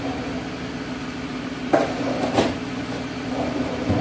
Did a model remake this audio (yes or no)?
no